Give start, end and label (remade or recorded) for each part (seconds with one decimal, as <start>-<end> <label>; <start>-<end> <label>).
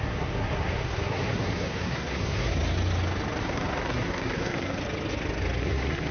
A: 0.0-2.6 remade; 2.6-3.4 recorded; 3.4-4.8 remade; 4.8-5.6 recorded; 5.6-6.1 remade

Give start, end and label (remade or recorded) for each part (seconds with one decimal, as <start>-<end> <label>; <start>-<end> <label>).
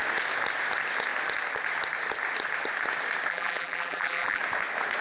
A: 0.0-3.3 recorded; 3.3-4.4 remade; 4.4-5.0 recorded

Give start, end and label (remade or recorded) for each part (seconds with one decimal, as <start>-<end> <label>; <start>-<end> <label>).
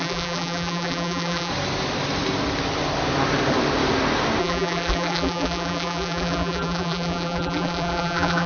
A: 0.0-1.5 remade; 1.5-4.4 recorded; 4.4-8.5 remade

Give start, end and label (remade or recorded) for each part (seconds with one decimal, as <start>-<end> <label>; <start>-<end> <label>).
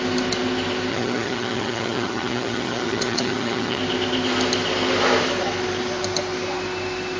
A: 0.0-0.9 recorded; 0.9-3.8 remade; 3.8-7.2 recorded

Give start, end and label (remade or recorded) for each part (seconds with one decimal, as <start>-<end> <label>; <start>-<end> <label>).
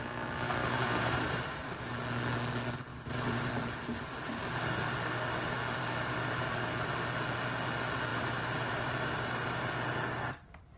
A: 0.0-0.6 recorded; 0.6-1.9 remade; 1.9-2.9 recorded; 2.9-3.5 remade; 3.5-8.1 recorded; 8.1-9.7 remade; 9.7-10.8 recorded